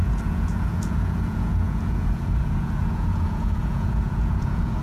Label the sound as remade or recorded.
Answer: remade